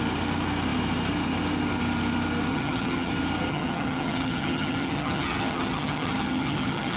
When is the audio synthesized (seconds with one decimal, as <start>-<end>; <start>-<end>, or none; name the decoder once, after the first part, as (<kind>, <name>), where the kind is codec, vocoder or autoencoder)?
2.5-3.1 (vocoder, HiFi-GAN); 3.5-7.0